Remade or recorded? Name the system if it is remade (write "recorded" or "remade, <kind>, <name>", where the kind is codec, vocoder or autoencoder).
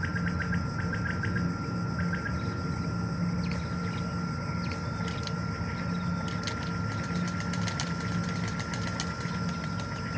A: recorded